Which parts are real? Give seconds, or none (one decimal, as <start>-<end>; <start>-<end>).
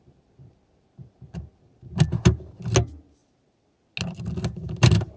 0.0-5.2